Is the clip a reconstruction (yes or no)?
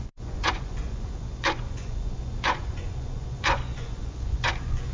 yes